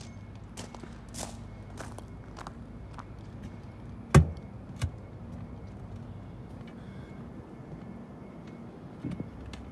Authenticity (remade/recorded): recorded